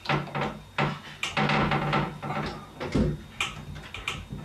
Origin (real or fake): real